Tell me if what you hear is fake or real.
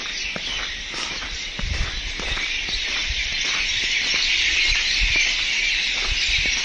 real